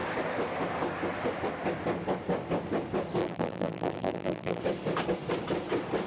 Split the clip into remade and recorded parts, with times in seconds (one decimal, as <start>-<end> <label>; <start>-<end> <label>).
0.0-3.2 recorded; 3.2-4.6 remade; 4.6-6.1 recorded